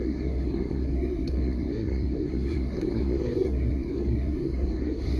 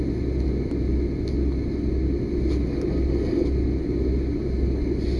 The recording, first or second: second